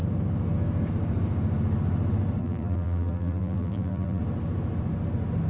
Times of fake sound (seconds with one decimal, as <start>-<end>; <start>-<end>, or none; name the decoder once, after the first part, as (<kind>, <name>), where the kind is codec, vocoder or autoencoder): 2.4-4.2 (vocoder, BigVGAN v2)